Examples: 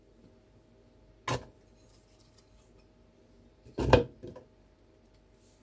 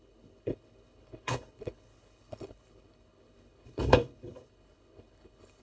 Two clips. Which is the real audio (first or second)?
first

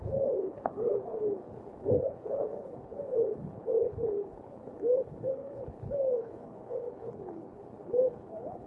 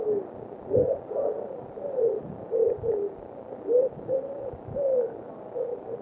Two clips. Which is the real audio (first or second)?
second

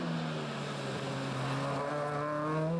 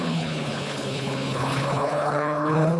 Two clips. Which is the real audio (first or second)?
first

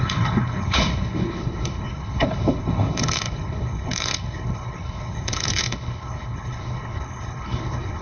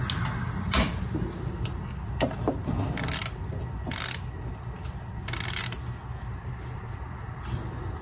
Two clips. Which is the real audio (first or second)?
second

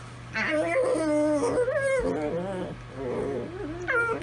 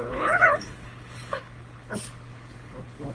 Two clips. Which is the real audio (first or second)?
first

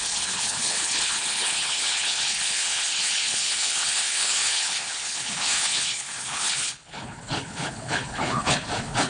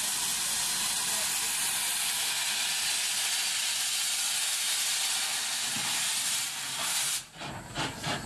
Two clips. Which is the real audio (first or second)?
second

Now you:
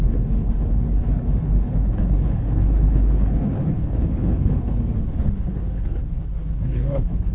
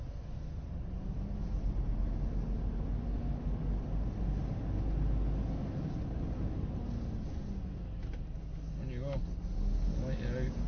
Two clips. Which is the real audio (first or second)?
second